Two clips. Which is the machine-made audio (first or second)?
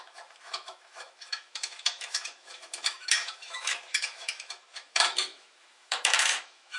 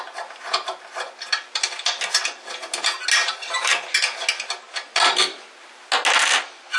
first